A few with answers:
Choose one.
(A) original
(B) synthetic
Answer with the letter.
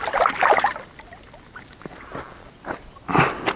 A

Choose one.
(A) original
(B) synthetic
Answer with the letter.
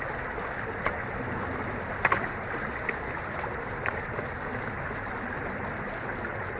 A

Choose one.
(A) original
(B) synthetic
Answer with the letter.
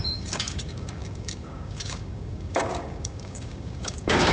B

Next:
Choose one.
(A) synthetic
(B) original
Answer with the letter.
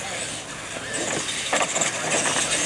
B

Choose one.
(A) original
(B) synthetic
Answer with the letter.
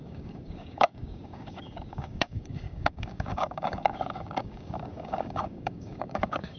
B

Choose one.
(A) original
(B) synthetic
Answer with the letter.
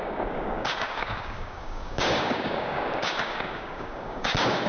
B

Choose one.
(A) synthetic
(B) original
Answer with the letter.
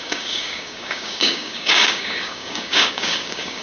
A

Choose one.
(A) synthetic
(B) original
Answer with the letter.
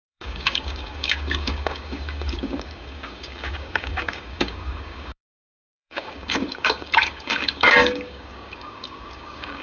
A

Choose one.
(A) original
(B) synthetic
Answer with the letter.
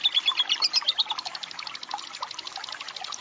A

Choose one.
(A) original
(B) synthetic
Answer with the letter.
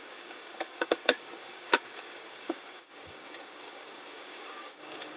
B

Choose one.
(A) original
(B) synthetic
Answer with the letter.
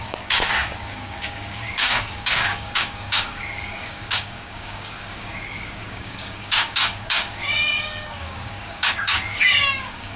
B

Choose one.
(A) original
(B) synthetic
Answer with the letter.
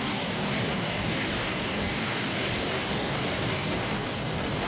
B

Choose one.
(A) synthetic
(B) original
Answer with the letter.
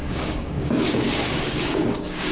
A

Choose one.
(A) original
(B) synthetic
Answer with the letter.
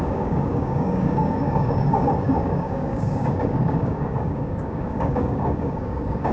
B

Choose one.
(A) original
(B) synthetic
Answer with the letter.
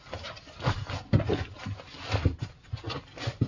A